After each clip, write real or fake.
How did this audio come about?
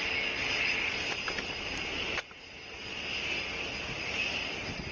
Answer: real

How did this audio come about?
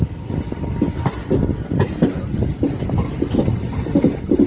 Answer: real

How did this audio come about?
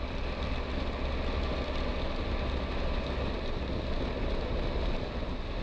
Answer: real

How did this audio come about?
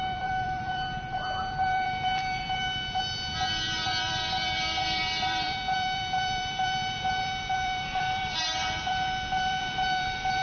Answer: fake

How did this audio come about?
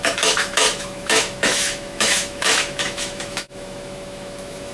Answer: fake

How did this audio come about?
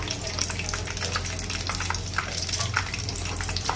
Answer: real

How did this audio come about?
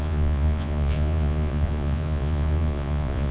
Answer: fake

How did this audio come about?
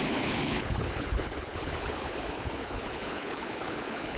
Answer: fake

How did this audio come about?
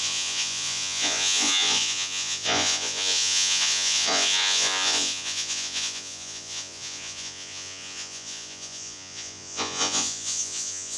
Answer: fake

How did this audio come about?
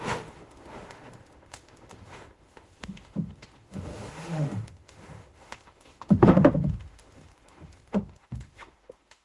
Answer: fake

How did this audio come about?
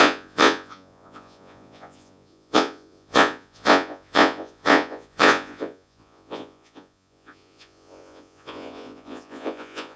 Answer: fake